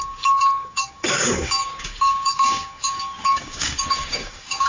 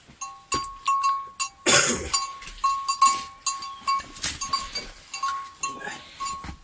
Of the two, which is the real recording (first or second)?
second